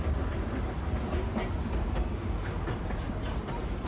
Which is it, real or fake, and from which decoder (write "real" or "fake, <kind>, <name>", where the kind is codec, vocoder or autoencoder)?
real